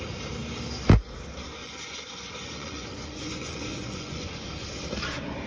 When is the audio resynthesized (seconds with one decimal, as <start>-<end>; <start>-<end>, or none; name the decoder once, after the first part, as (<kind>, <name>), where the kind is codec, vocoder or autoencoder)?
1.6-4.5 (vocoder, Vocos)